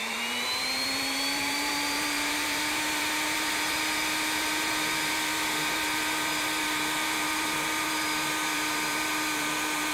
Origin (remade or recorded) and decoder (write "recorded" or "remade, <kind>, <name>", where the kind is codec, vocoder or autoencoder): remade, vocoder, BigVGAN v2